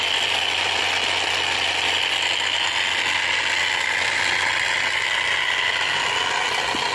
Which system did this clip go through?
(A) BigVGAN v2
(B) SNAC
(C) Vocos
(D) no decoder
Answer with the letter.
D